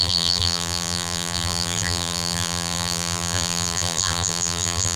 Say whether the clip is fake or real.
fake